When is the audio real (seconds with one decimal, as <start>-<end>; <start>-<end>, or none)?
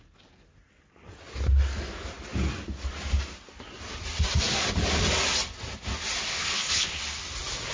0.0-6.3; 7.0-7.7